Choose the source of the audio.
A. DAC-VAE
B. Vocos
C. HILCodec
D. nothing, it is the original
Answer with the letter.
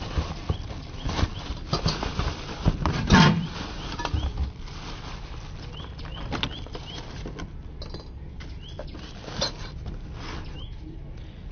D